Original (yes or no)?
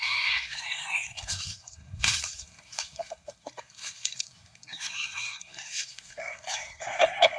no